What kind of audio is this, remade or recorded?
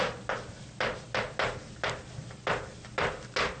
recorded